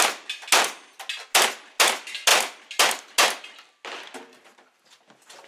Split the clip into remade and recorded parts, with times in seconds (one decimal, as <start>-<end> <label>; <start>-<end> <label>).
0.0-5.5 recorded